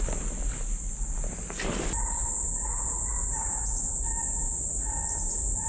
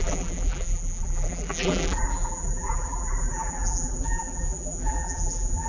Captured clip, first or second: first